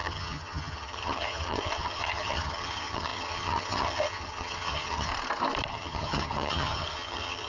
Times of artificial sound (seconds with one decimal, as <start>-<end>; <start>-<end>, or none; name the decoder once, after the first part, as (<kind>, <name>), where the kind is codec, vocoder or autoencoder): 0.0-5.1 (vocoder, HiFi-GAN); 5.7-7.5

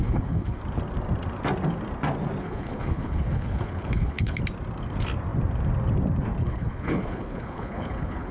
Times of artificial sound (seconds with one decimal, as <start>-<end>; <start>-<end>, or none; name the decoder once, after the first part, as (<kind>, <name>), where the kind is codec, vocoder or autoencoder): 0.0-0.6 (codec, HILCodec); 2.4-4.4; 6.4-8.3

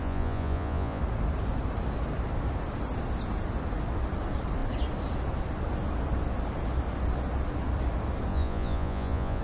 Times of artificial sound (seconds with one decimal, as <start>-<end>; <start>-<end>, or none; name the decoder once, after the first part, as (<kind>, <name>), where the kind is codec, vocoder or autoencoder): 0.0-1.0 (vocoder, Vocos); 8.3-9.4

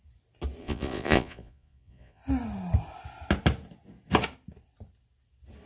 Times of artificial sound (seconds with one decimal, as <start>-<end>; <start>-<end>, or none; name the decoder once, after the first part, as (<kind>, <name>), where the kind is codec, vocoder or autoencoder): 0.6-2.2 (vocoder, Vocos)

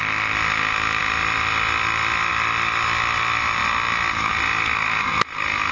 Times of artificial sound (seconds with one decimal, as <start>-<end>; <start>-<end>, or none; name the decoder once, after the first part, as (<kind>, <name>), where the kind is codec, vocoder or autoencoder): none

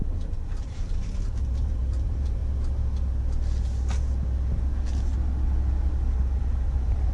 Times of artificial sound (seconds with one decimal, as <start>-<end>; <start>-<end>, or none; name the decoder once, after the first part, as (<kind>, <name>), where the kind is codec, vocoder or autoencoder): 0.0-2.4 (vocoder, BigVGAN v2); 6.4-7.1

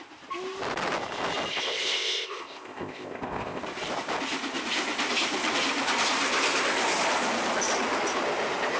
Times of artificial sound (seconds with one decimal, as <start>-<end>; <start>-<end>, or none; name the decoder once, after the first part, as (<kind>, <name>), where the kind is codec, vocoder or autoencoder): 1.5-3.6 (codec, ZipCodec)

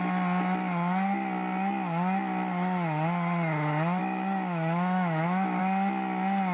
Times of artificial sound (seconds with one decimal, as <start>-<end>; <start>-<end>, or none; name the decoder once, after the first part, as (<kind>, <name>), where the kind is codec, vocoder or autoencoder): 4.0-5.6 (autoencoder, DAC-VAE)